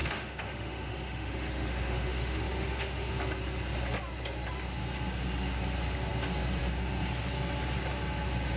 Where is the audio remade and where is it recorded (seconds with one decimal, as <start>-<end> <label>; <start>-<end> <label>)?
0.0-3.1 remade; 3.1-8.6 recorded